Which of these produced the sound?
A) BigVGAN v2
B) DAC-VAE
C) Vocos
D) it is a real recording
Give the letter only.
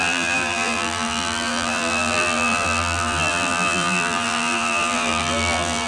A